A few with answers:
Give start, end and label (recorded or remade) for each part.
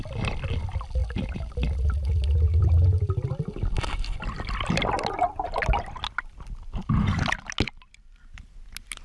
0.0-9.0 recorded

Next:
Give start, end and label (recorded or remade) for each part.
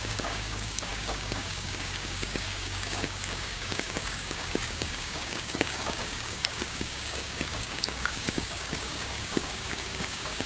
0.0-10.5 remade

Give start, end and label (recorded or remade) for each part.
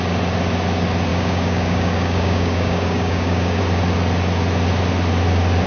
0.0-1.1 recorded; 1.1-3.6 remade; 3.6-5.7 recorded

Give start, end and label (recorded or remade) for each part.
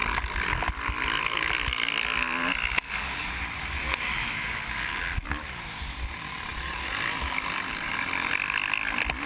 0.0-4.2 recorded; 4.2-4.9 remade; 4.9-9.3 recorded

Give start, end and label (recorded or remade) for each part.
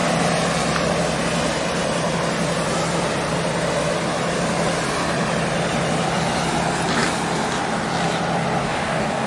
0.0-8.6 recorded; 8.6-9.3 remade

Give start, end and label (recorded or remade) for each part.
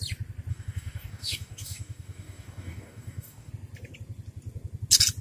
0.0-0.5 recorded; 0.5-3.5 remade; 3.5-5.2 recorded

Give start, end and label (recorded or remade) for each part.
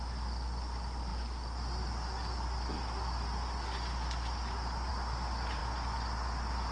0.0-6.7 recorded